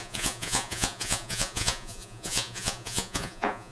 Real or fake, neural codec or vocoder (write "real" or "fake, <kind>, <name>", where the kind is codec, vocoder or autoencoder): fake, vocoder, Vocos